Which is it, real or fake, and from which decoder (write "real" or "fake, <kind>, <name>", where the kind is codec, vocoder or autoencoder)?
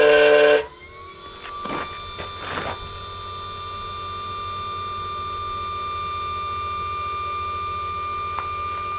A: real